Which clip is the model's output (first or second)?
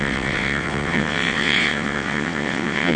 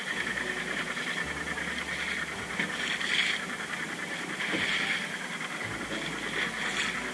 first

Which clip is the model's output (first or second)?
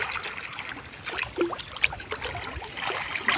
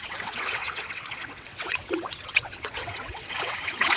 second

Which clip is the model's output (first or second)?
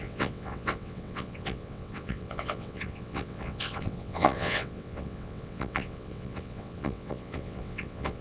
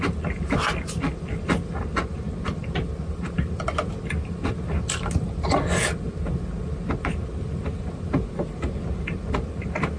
first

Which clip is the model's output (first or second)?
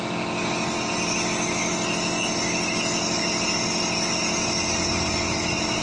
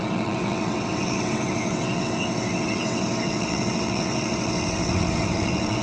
second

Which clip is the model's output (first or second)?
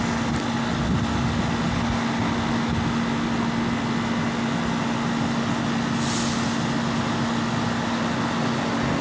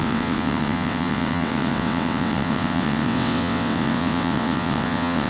second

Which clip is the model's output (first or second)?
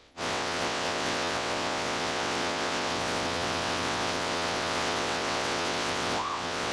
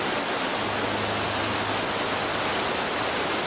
first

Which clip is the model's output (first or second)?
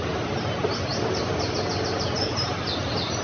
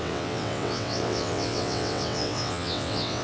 second